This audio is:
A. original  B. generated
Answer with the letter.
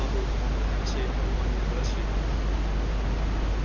A